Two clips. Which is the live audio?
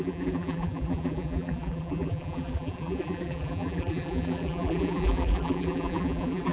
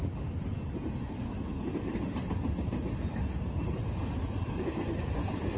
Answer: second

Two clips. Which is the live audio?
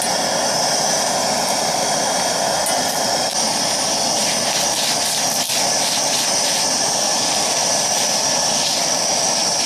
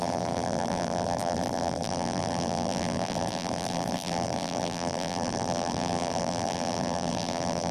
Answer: first